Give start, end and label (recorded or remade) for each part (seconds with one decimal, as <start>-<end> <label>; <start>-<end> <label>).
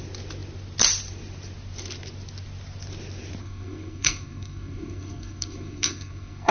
0.0-3.4 recorded; 3.4-6.5 remade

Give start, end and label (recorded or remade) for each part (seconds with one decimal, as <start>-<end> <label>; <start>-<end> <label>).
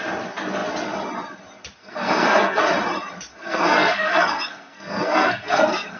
0.0-1.8 recorded; 1.8-2.6 remade; 2.6-3.3 recorded; 3.3-6.0 remade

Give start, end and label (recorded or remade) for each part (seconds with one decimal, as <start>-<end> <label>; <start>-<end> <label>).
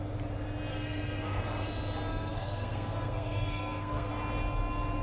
0.0-0.7 recorded; 0.7-1.4 remade; 1.4-2.1 recorded; 2.1-4.1 remade; 4.1-5.0 recorded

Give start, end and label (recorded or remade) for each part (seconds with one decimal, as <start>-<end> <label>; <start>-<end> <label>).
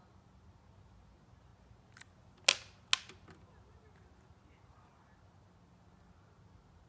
0.0-6.9 recorded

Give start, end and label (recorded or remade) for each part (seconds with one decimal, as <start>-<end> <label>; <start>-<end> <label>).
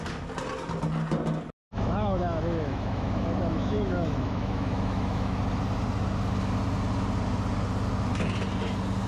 0.0-1.6 recorded; 1.6-5.4 remade; 5.4-9.1 recorded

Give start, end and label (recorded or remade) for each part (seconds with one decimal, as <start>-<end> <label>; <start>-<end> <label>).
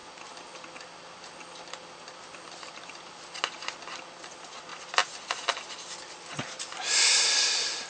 0.0-7.9 recorded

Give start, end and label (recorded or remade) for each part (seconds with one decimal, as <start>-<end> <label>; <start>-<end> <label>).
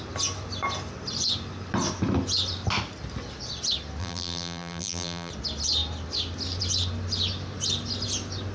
0.0-4.0 recorded; 4.0-5.3 remade; 5.3-8.5 recorded